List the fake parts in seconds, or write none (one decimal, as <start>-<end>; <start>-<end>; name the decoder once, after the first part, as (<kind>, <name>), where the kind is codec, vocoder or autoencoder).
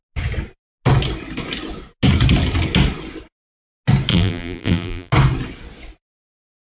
4.1-5.1 (vocoder, BigVGAN v2)